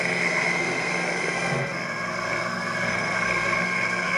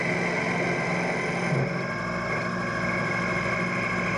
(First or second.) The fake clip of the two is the first